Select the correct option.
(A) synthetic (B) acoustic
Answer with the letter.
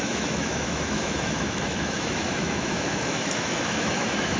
A